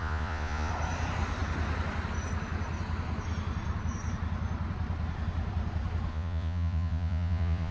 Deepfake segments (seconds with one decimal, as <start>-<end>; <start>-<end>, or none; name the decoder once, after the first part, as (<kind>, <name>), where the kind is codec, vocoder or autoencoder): 0.0-0.7 (vocoder, Vocos); 6.1-7.7